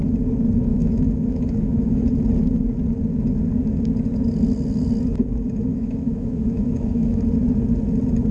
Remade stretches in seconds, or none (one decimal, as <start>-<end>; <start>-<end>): 0.7-2.0; 5.7-7.2